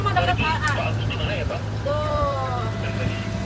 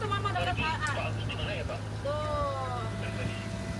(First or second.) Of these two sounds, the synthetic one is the first